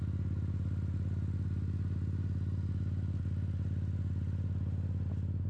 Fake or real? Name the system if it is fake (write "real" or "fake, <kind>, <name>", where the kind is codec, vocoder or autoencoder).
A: real